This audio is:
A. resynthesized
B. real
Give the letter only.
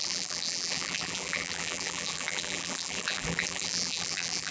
A